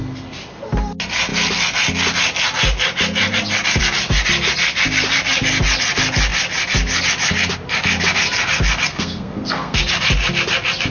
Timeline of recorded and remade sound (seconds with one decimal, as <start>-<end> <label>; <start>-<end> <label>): 0.0-8.9 recorded; 8.9-9.8 remade; 9.8-10.9 recorded